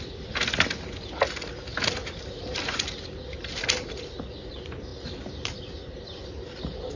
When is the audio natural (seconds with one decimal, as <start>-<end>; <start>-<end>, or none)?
0.0-7.0